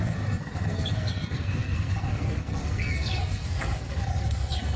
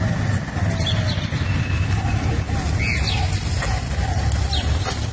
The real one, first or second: second